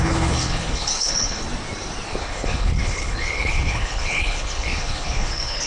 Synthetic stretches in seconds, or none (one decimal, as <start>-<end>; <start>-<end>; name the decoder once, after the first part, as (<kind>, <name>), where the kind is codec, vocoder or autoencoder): 0.0-1.4 (codec, HILCodec); 2.2-5.7